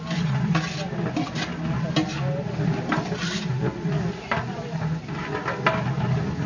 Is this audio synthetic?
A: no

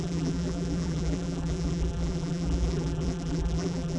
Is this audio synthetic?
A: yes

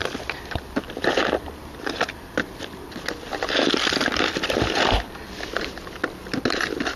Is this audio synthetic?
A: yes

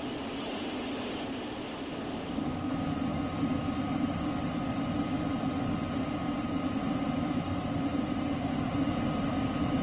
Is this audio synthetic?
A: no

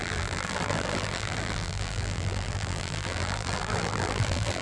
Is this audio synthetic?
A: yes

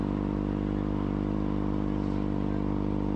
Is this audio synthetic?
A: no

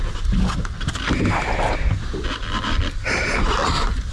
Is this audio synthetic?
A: yes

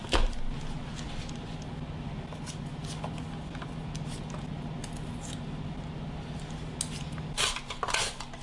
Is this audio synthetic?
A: no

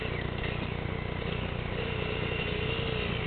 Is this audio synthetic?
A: no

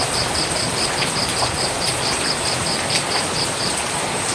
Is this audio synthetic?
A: yes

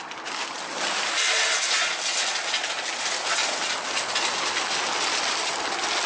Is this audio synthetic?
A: no